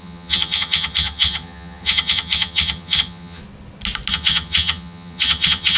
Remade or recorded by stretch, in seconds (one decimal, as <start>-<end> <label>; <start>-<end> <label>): 0.0-3.4 remade; 3.4-4.1 recorded; 4.1-5.8 remade